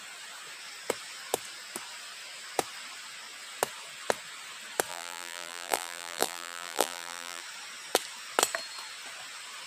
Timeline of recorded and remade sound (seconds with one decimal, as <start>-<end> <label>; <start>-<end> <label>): 0.0-4.9 recorded; 4.9-7.4 remade; 7.4-9.7 recorded